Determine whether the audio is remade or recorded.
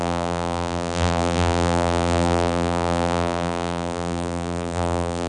remade